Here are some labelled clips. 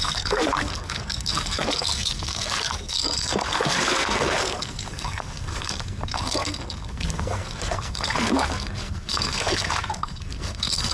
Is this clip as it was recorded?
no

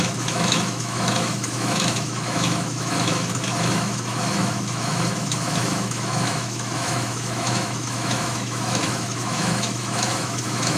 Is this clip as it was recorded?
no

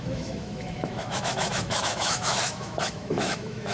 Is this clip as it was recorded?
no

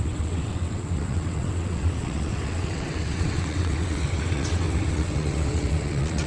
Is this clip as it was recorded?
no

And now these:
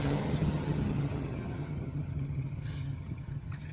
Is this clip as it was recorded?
no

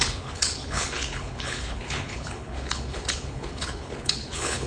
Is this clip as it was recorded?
no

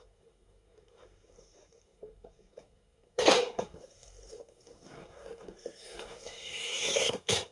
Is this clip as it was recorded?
no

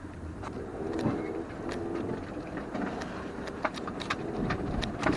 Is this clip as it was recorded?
no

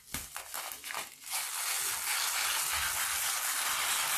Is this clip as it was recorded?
yes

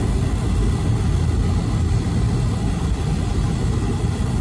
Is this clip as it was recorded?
yes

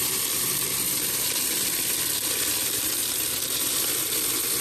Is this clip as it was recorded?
no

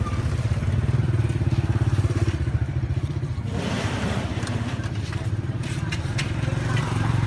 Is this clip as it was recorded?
no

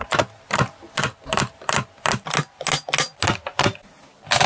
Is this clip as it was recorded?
yes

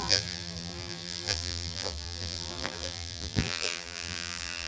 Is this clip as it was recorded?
no